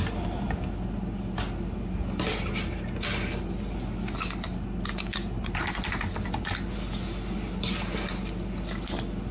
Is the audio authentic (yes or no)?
yes